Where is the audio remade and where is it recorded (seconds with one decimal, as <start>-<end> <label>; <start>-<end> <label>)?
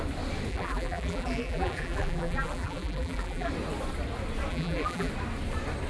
0.0-0.5 recorded; 0.5-3.5 remade; 3.5-4.5 recorded; 4.5-5.1 remade; 5.1-5.9 recorded